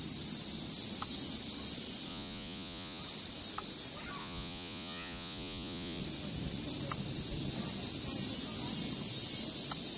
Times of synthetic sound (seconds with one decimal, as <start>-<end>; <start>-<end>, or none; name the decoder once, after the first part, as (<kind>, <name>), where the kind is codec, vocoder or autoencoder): 2.1-3.0 (vocoder, Vocos); 4.2-6.0